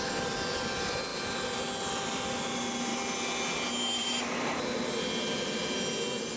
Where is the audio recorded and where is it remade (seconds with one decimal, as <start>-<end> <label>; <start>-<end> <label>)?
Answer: 0.0-6.4 recorded